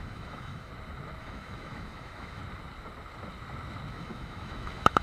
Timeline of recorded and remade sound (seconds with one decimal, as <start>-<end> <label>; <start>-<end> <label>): 0.0-0.7 remade; 0.7-1.2 recorded; 1.2-2.4 remade; 2.4-3.9 recorded; 3.9-5.0 remade